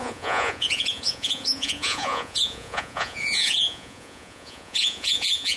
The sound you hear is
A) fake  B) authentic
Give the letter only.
A